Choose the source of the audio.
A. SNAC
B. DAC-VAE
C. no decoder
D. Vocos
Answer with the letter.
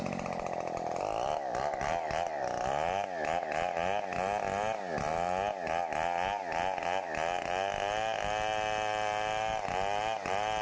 C